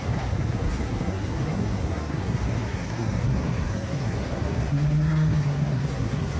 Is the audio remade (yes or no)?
yes